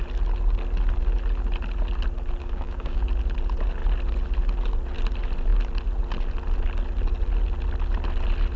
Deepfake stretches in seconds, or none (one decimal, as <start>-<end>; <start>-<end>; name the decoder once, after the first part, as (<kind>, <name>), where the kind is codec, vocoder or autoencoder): 2.4-3.0 (codec, DAC)